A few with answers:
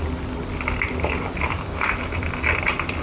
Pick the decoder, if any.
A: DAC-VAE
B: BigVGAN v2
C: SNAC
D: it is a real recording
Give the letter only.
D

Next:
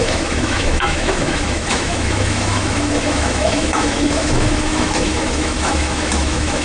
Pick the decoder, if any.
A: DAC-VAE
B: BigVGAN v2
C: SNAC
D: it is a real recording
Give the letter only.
A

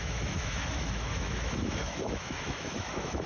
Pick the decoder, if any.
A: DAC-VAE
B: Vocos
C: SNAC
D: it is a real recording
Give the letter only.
A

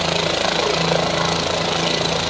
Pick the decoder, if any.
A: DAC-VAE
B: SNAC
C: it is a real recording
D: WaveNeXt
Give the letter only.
C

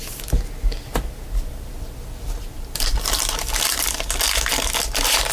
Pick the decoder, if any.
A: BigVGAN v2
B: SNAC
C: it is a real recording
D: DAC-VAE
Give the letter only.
C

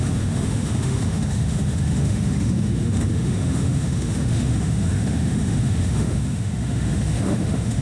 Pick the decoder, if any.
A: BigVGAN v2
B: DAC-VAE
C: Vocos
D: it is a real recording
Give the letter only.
B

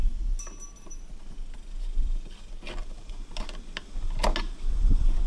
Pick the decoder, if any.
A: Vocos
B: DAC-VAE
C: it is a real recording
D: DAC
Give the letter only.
C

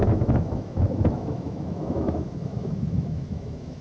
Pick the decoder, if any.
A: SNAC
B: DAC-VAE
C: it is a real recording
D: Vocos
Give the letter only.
B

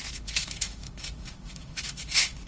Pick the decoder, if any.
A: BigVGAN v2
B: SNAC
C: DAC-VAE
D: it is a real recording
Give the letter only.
C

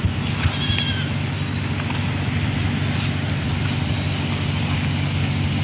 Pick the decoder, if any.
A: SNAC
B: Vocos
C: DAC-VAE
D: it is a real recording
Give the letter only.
D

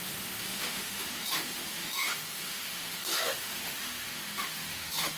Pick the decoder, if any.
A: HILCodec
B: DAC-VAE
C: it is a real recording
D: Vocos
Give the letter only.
B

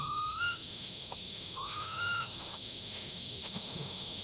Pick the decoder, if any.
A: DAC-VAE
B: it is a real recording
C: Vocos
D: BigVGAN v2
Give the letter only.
A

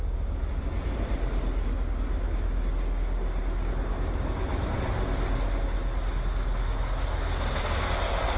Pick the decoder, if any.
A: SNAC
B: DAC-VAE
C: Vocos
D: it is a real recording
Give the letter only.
D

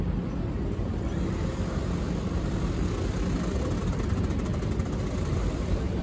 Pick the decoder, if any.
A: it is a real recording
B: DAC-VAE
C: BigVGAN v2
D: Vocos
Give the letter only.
A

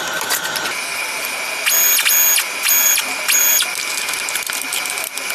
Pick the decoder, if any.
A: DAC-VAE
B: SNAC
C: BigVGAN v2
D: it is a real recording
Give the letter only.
D